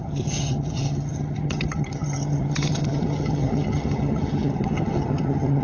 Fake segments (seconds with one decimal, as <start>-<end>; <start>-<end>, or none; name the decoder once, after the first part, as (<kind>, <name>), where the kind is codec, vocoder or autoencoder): 0.0-5.6 (vocoder, HiFi-GAN)